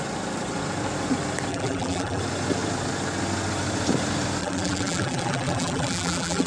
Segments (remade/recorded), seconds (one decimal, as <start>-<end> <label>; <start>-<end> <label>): 0.0-1.5 recorded; 1.5-2.2 remade; 2.2-4.4 recorded; 4.4-6.5 remade